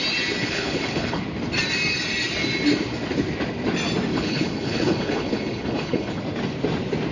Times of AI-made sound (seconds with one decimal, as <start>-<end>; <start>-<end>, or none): 0.4-1.2; 4.1-6.2